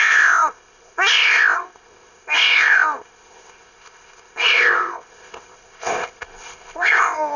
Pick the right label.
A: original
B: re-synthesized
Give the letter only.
B